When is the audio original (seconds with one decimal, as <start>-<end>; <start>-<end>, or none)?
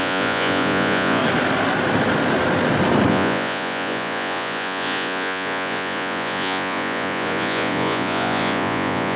1.2-3.1